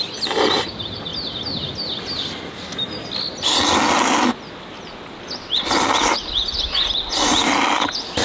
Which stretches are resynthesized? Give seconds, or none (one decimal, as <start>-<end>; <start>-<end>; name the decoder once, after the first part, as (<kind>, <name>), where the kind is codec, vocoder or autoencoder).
none